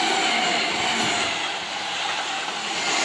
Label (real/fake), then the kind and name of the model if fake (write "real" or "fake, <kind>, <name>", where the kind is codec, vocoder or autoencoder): real